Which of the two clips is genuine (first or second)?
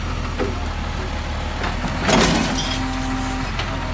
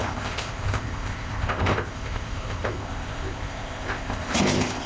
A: first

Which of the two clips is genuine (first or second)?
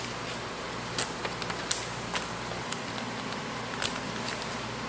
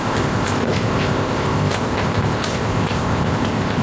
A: first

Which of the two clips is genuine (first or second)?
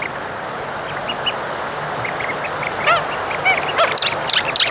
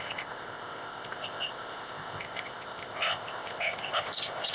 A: first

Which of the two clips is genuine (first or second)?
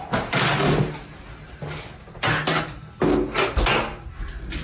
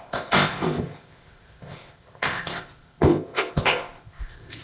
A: first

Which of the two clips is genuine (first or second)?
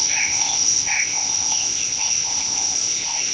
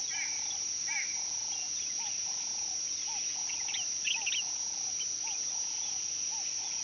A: second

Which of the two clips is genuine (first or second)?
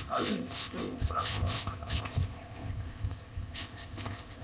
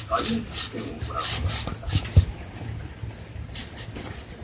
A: second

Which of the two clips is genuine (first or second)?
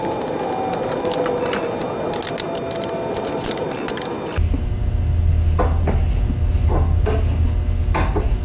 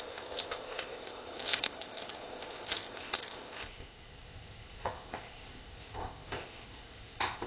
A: first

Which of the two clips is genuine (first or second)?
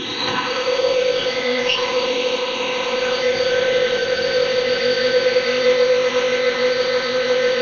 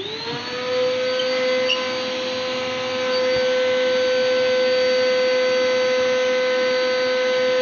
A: second